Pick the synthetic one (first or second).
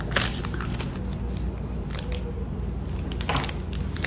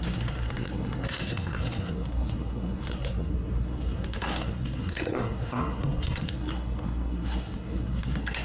second